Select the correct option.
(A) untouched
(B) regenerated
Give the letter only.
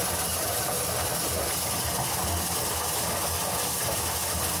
A